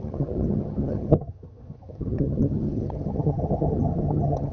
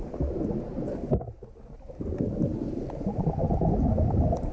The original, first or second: second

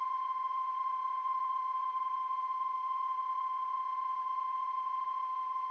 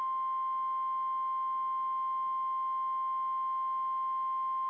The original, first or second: second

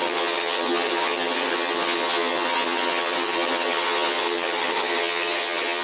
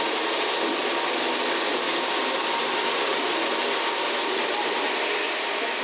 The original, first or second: second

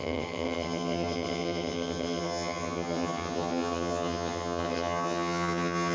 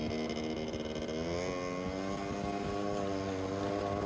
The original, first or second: second